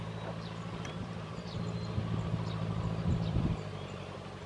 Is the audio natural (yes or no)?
no